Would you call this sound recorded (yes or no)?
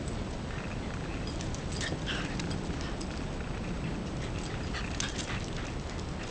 yes